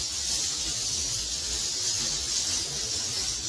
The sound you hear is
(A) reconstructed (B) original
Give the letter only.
B